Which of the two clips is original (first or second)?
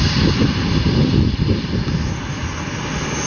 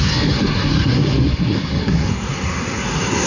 first